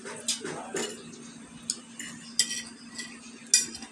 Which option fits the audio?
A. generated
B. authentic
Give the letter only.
B